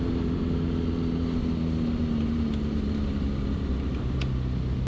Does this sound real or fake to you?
real